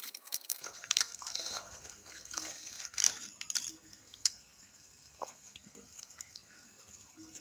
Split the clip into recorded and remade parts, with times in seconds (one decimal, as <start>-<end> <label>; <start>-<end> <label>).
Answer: 0.0-3.0 remade; 3.0-3.7 recorded; 3.7-7.4 remade